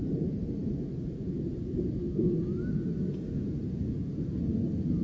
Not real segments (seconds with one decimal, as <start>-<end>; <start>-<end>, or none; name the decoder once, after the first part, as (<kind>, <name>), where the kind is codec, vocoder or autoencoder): 0.0-5.0 (vocoder, BigVGAN v2)